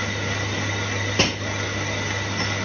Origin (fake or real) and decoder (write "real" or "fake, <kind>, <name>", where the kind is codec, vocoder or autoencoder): real